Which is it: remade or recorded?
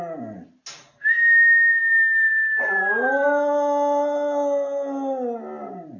recorded